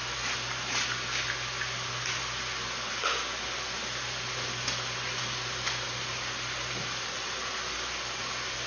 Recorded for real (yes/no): yes